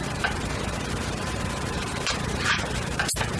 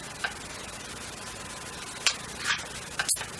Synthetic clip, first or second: first